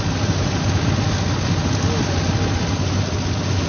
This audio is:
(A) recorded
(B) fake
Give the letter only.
A